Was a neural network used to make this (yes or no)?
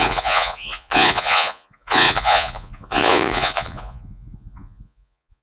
yes